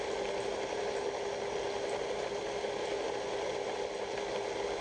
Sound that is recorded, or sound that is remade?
recorded